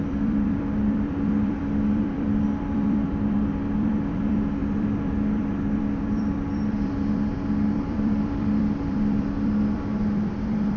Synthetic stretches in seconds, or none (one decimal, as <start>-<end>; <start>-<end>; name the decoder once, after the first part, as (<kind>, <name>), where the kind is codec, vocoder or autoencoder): 0.0-10.8 (vocoder, BigVGAN v2)